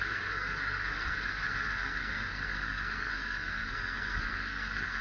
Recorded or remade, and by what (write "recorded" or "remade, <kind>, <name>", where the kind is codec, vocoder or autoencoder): remade, codec, SNAC